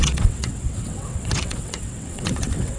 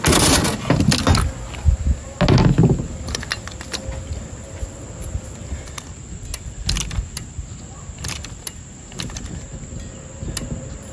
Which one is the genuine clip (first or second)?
second